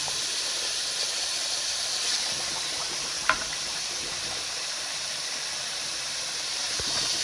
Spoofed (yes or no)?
yes